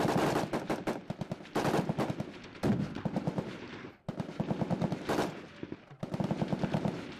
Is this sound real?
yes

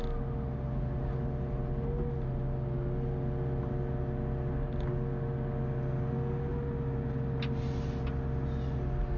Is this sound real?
yes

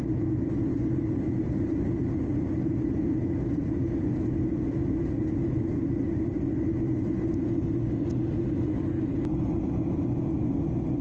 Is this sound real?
yes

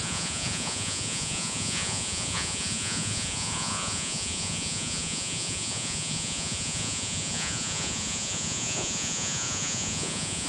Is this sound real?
no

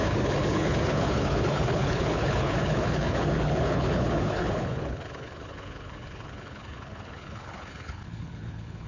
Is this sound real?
no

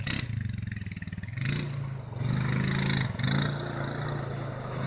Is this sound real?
yes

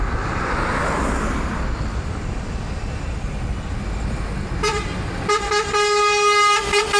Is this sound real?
yes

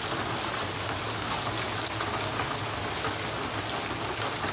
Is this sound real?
yes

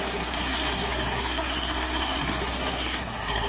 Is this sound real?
no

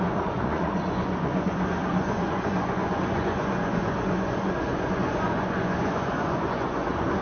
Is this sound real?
no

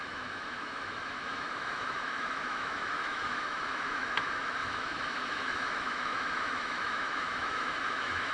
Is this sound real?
no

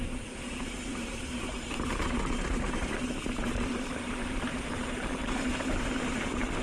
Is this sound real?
no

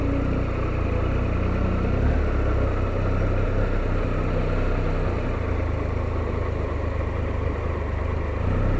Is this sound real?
yes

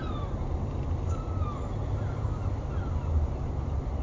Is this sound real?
yes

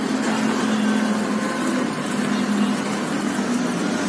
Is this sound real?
yes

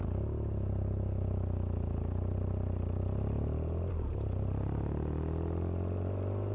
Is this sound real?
yes